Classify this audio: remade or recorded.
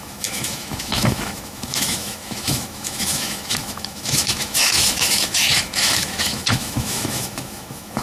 remade